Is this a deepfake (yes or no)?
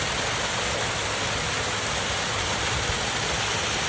no